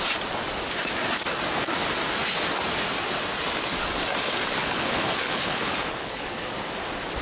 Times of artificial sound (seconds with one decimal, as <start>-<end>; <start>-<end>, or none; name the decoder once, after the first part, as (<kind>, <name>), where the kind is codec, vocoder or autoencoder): 4.6-6.5 (codec, HILCodec)